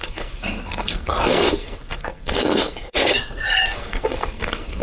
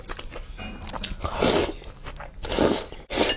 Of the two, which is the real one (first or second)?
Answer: second